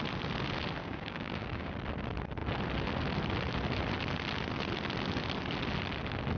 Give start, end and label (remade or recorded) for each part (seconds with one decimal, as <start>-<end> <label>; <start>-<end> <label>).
0.0-0.8 recorded; 0.8-1.7 remade; 1.7-6.4 recorded